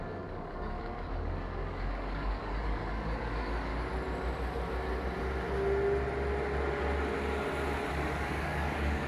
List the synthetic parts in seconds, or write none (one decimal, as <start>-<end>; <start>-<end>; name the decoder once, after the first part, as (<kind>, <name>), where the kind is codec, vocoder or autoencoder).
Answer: 0.0-3.7 (codec, DAC); 7.9-9.1